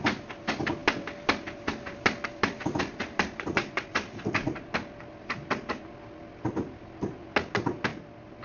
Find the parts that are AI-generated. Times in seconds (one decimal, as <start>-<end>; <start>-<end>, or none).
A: 0.8-5.8